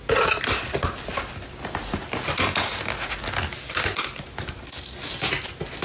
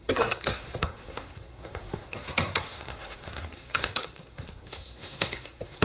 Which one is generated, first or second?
second